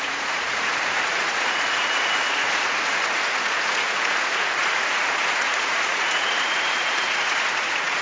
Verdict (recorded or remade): remade